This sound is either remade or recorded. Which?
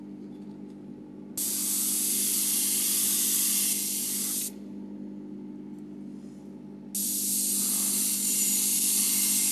recorded